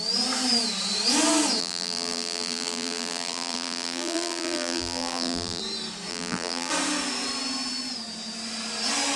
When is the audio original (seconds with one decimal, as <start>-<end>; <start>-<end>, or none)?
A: 0.0-1.6; 5.6-6.1; 6.7-9.2